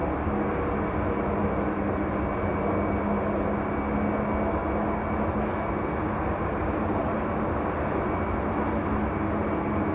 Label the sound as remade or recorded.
recorded